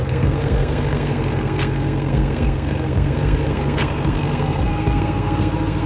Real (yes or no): no